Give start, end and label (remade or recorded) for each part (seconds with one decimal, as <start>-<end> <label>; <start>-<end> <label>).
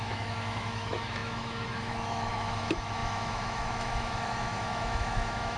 0.0-5.6 remade